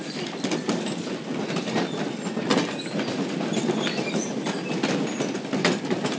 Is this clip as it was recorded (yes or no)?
yes